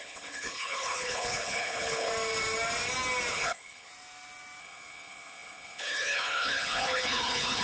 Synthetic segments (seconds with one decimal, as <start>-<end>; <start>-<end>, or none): 0.0-2.1; 3.3-3.9; 4.6-7.6